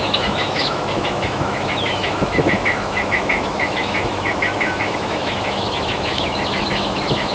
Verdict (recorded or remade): remade